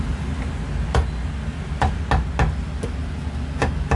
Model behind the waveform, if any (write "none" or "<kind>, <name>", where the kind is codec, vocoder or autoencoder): none